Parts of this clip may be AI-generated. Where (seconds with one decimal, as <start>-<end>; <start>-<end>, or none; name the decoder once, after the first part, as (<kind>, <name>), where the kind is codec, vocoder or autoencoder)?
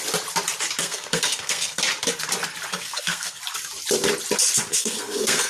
0.8-1.8 (codec, SNAC); 2.7-3.4; 4.7-5.5